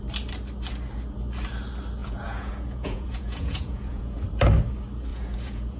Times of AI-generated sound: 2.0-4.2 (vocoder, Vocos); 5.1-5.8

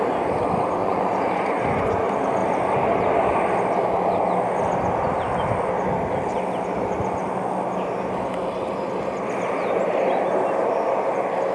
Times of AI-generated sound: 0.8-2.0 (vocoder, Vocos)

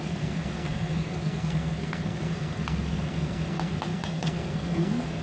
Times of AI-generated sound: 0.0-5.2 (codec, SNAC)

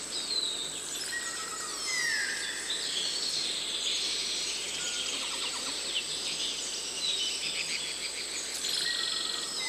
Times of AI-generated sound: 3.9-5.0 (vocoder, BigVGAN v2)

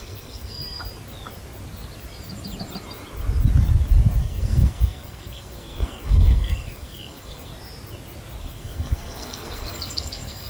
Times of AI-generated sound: 0.0-0.8 (codec, SNAC); 4.2-7.5; 8.4-10.5

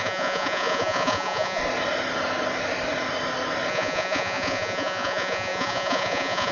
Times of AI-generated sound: 0.0-1.6 (vocoder, Vocos); 3.7-6.5